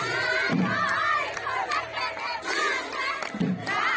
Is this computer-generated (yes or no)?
no